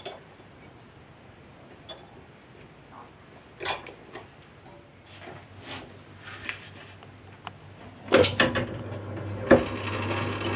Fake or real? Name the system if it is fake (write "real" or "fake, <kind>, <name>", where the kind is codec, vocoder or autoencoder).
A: real